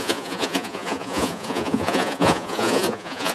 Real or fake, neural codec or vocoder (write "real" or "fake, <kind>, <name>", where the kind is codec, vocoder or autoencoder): fake, vocoder, Vocos